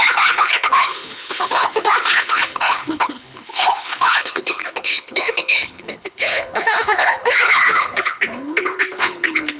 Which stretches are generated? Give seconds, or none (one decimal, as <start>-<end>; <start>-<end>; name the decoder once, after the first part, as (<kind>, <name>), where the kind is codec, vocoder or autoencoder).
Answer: 0.0-9.6 (codec, HILCodec)